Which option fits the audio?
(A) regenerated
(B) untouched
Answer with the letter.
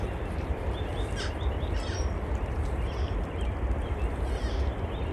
A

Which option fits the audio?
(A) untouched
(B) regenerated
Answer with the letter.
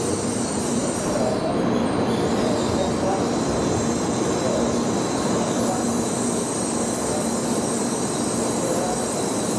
B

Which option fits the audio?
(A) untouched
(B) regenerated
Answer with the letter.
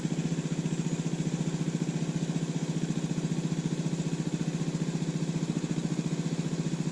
A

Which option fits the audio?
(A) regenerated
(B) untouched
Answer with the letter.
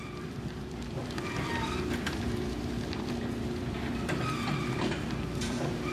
A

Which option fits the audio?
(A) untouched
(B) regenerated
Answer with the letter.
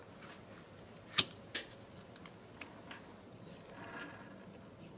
A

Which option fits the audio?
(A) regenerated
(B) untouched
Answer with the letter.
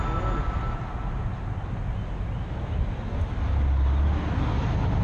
B